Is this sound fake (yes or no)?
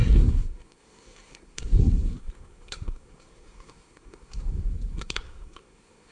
yes